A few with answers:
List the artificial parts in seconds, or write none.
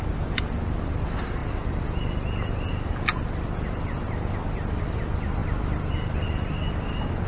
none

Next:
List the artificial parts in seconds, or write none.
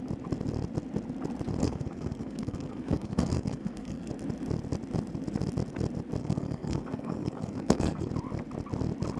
1.6-4.1 (codec, SNAC); 6.2-8.1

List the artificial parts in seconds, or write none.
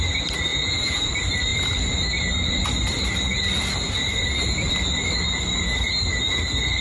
0.5-1.1 (vocoder, Vocos)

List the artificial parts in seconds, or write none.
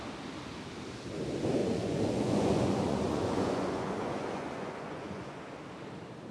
1.6-5.4 (vocoder, Vocos)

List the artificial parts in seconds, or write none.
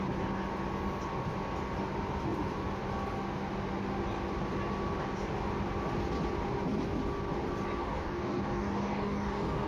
7.8-9.7 (codec, DAC)